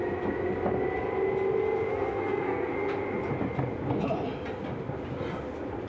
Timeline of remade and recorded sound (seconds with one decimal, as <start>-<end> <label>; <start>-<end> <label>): 0.0-1.9 recorded; 1.9-2.7 remade; 2.7-5.9 recorded